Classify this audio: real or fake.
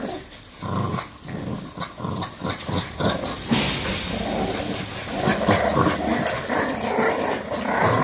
real